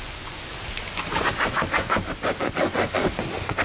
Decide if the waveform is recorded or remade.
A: remade